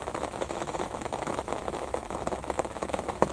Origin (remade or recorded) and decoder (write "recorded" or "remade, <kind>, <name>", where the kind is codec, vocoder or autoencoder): remade, autoencoder, DAC-VAE